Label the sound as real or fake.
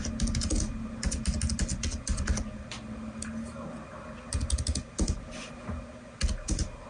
real